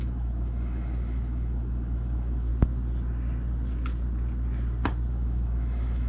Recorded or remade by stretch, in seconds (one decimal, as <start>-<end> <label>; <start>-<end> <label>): 0.0-2.5 remade; 2.5-5.1 recorded; 5.1-6.1 remade